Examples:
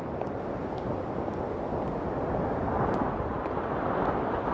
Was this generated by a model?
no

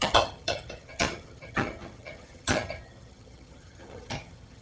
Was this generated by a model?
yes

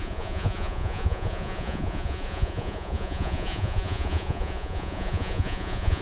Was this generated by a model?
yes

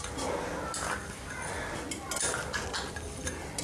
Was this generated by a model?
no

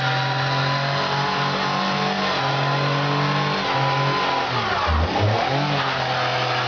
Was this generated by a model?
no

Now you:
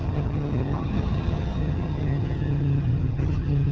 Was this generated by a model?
yes